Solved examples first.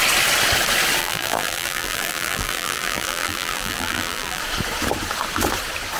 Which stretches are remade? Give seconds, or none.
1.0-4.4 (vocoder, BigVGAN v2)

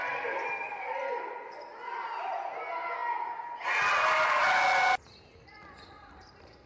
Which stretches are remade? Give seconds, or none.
0.0-1.1 (vocoder, BigVGAN v2)

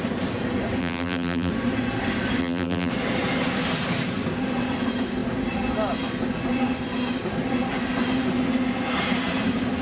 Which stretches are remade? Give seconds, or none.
0.8-1.5 (vocoder, BigVGAN v2); 2.4-2.9

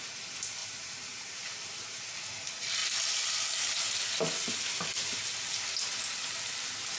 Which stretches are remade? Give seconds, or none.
0.6-2.0 (vocoder, BigVGAN v2)

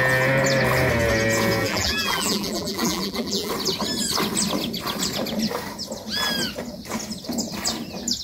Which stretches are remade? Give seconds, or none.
1.6-3.5 (vocoder, BigVGAN v2)

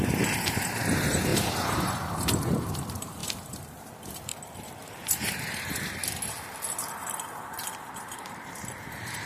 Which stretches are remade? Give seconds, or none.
0.0-4.3 (vocoder, BigVGAN v2); 4.9-6.0; 6.9-9.3